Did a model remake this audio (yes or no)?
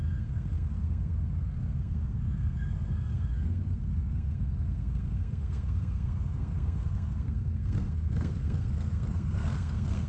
yes